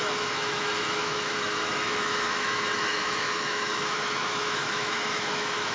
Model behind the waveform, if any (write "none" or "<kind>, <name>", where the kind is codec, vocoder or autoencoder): autoencoder, DAC-VAE